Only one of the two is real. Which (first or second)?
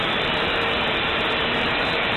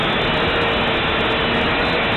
second